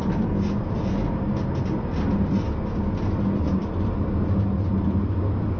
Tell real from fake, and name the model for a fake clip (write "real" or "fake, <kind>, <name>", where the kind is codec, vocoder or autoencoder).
real